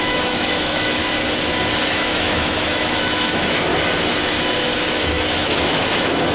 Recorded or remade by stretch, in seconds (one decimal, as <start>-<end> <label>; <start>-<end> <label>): 0.0-1.0 remade; 1.0-1.9 recorded; 1.9-3.7 remade; 3.7-4.9 recorded; 4.9-6.3 remade

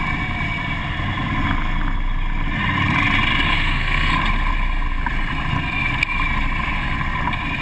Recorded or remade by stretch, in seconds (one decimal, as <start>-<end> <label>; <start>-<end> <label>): 0.0-3.5 recorded; 3.5-4.1 remade; 4.1-7.6 recorded

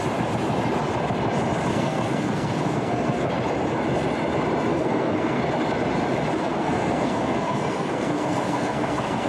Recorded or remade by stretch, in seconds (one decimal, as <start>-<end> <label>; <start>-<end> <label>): 0.0-1.7 recorded; 1.7-3.3 remade; 3.3-4.7 recorded; 4.7-5.4 remade; 5.4-6.4 recorded; 6.4-9.3 remade

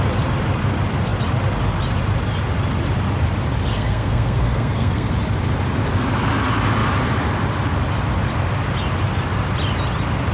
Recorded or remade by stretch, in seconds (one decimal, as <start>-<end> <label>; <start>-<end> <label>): 0.0-3.7 recorded; 3.7-5.1 remade; 5.1-10.3 recorded

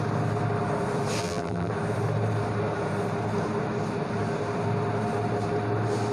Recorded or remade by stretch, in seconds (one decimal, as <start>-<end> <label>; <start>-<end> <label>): 0.0-1.2 recorded; 1.2-1.7 remade; 1.7-6.1 recorded

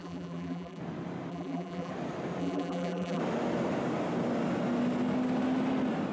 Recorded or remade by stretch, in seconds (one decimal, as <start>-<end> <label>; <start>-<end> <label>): 0.0-0.8 remade; 0.8-1.3 recorded; 1.3-1.9 remade; 1.9-2.4 recorded; 2.4-3.2 remade; 3.2-6.1 recorded